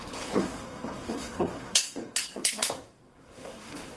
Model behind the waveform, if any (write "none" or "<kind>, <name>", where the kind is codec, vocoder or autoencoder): codec, SNAC